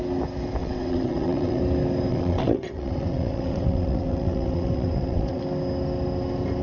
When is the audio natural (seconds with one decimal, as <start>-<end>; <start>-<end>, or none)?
0.0-0.6; 1.6-2.1; 5.4-6.6

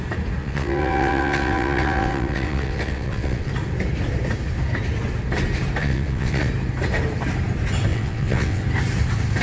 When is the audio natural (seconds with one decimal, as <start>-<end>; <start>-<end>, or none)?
0.0-0.4; 3.5-5.8; 6.5-7.9; 8.6-9.4

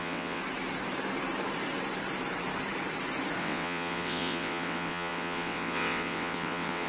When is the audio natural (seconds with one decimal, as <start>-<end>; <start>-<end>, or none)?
0.4-3.4